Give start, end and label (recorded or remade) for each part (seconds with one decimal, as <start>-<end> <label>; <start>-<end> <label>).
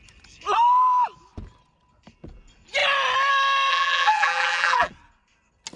0.0-3.7 recorded; 3.7-4.9 remade; 4.9-5.8 recorded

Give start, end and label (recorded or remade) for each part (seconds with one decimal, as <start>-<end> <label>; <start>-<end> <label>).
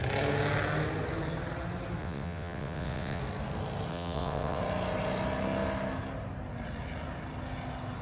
0.0-2.0 recorded; 2.0-3.2 remade; 3.2-3.9 recorded; 3.9-4.6 remade; 4.6-8.0 recorded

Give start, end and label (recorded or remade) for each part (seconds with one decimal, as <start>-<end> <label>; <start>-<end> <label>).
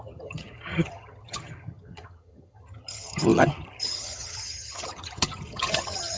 0.0-6.2 remade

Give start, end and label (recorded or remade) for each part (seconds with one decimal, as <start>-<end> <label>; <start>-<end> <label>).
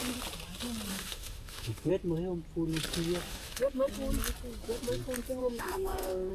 0.0-0.9 recorded; 0.9-1.9 remade; 1.9-3.3 recorded; 3.3-3.9 remade; 3.9-5.4 recorded; 5.4-6.3 remade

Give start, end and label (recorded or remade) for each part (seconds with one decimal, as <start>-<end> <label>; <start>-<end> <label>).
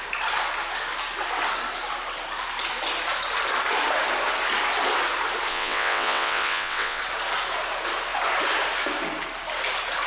0.0-5.5 recorded; 5.5-7.0 remade; 7.0-10.1 recorded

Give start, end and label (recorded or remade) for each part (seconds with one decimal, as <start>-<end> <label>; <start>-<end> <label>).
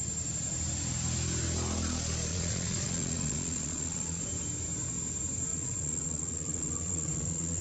0.0-2.3 recorded; 2.3-4.2 remade; 4.2-5.5 recorded; 5.5-7.6 remade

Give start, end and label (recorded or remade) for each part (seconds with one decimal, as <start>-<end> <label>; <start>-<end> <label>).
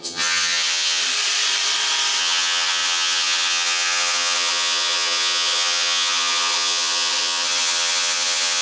0.0-1.0 remade; 1.0-2.2 recorded; 2.2-8.6 remade